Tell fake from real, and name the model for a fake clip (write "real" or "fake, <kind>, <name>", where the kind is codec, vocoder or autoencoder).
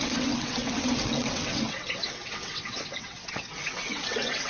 fake, vocoder, WaveNeXt